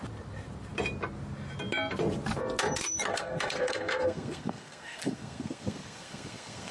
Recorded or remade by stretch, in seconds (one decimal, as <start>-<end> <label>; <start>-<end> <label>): 0.0-3.1 recorded; 3.1-6.7 remade